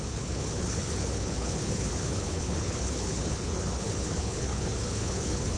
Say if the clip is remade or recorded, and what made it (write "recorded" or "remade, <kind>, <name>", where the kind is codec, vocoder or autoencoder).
remade, codec, HILCodec